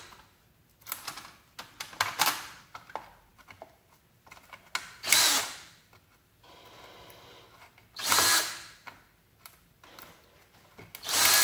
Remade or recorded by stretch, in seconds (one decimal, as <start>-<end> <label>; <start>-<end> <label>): 0.0-11.4 recorded